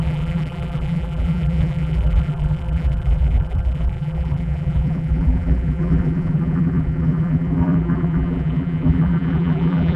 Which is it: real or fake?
fake